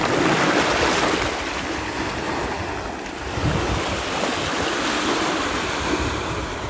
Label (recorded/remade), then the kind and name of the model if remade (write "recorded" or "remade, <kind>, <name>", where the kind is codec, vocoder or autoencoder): recorded